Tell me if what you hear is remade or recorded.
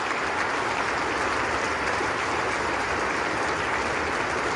recorded